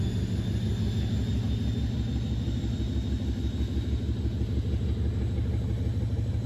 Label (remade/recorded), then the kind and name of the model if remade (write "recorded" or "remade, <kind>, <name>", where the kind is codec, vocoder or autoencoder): recorded